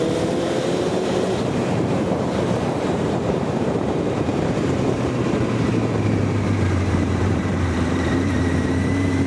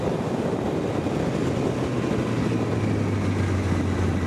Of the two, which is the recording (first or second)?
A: second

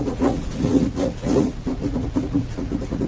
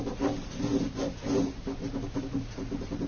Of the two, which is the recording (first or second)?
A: second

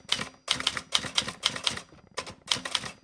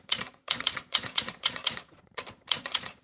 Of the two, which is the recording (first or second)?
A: first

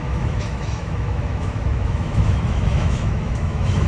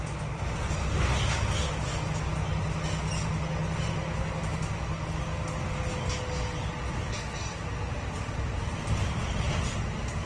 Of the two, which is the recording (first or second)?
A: second